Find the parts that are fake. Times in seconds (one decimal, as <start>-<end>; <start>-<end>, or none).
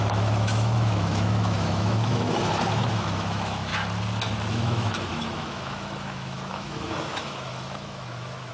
0.0-3.7; 4.5-8.5